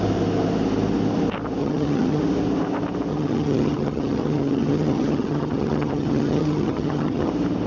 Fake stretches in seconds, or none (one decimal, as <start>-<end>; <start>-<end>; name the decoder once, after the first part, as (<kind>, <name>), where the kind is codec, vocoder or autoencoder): 1.6-2.2 (vocoder, HiFi-GAN); 3.1-7.3